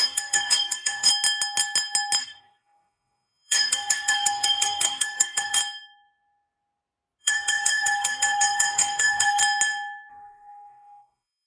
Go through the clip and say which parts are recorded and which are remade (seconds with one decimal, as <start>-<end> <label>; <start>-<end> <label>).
0.0-1.1 remade; 1.1-2.2 recorded; 2.2-5.6 remade; 5.6-7.2 recorded; 7.2-9.4 remade; 9.4-10.1 recorded; 10.1-11.5 remade